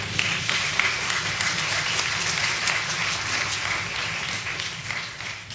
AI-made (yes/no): yes